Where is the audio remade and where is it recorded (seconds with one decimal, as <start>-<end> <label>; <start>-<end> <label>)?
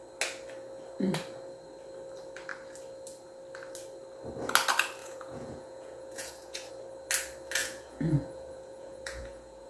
0.0-5.0 recorded; 5.0-6.7 remade; 6.7-7.6 recorded; 7.6-9.7 remade